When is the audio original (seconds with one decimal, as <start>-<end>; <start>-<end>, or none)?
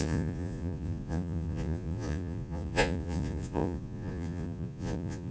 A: none